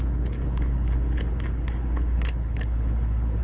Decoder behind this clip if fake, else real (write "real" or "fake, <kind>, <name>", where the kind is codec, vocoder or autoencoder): fake, codec, HILCodec